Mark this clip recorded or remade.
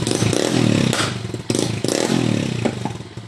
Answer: recorded